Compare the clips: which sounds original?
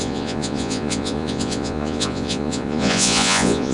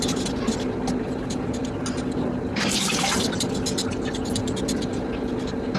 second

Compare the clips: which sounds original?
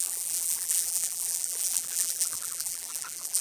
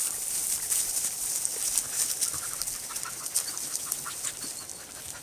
second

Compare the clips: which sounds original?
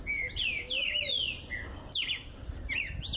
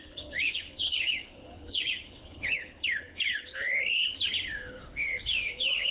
first